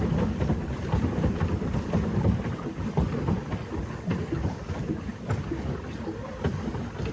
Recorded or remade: recorded